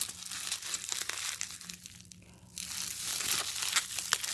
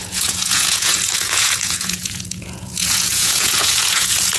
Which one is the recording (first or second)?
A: first